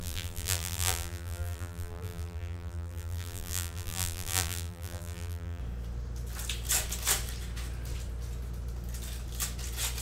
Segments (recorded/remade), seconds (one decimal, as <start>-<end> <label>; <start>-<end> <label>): 0.0-5.6 remade; 5.6-10.0 recorded